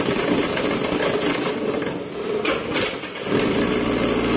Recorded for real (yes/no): yes